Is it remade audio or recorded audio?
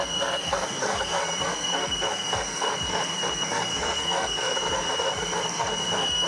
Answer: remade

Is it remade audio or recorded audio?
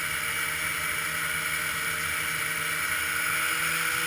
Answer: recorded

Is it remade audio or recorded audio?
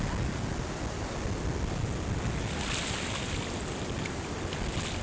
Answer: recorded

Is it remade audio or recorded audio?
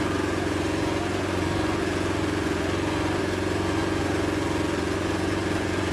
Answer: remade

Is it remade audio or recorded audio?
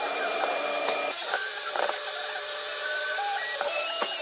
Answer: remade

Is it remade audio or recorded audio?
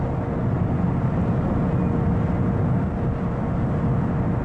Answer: recorded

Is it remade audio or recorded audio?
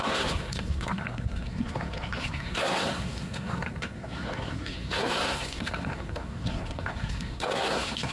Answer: remade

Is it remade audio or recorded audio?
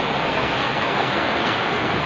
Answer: remade